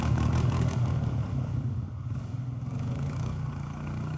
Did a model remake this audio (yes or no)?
yes